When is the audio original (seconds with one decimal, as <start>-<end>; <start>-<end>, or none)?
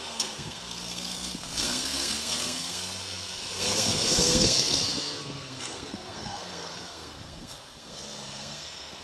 none